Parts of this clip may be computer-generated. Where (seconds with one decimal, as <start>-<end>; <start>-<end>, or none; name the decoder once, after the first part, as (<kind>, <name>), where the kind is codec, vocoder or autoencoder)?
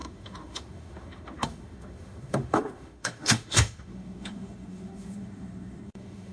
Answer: 0.0-6.3 (autoencoder, DAC-VAE)